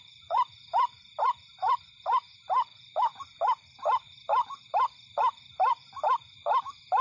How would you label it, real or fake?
fake